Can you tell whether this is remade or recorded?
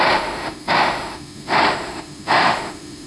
remade